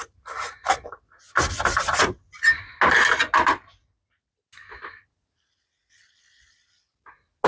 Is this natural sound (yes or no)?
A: yes